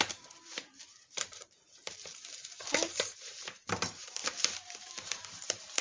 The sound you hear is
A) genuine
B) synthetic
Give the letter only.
B